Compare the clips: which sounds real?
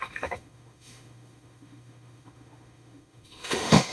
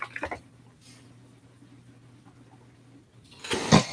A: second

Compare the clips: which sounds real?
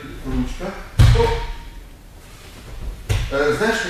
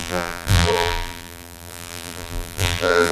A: first